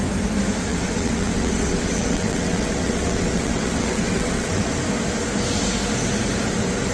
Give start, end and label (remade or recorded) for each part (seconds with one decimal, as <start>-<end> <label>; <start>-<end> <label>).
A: 0.0-0.7 recorded; 0.7-4.8 remade; 4.8-6.9 recorded

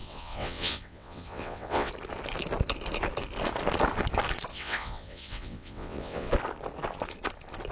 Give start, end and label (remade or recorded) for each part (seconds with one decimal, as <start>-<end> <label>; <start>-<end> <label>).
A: 0.0-1.9 remade; 1.9-4.5 recorded; 4.5-6.3 remade; 6.3-7.7 recorded

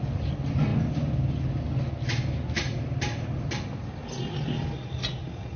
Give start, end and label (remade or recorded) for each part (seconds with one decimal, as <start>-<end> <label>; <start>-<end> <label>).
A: 0.0-5.6 recorded

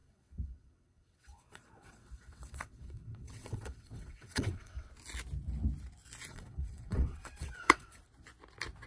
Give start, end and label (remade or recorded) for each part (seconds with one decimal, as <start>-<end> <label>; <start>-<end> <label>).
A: 0.0-4.9 remade; 4.9-6.3 recorded; 6.3-8.0 remade; 8.0-8.9 recorded

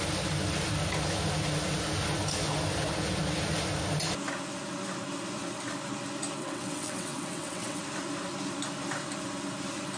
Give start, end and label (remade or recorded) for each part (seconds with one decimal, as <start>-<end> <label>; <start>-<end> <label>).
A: 0.0-6.4 recorded; 6.4-7.8 remade; 7.8-10.0 recorded

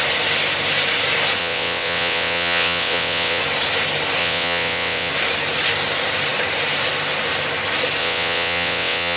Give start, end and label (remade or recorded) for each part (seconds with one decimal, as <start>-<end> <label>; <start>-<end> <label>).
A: 0.0-1.4 recorded; 1.4-3.4 remade; 3.4-4.2 recorded; 4.2-5.1 remade; 5.1-8.0 recorded; 8.0-9.2 remade